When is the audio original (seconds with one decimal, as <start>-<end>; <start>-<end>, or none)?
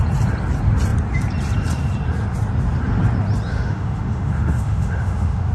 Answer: 0.0-3.5